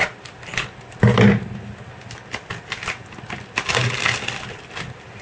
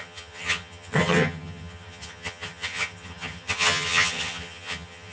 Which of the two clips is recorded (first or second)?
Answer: first